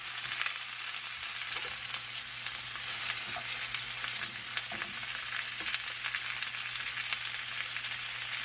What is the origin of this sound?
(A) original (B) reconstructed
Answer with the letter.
A